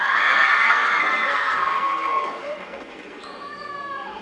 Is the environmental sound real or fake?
fake